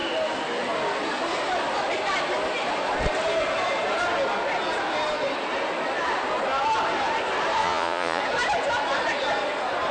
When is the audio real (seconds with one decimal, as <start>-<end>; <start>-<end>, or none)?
0.0-7.6; 8.2-9.9